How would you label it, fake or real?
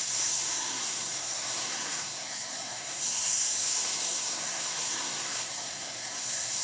fake